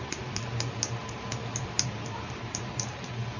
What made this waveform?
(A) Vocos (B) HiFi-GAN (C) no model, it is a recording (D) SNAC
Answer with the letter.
C